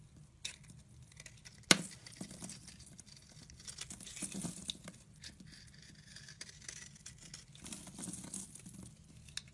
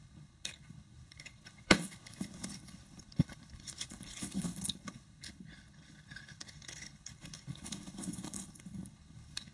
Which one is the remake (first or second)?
second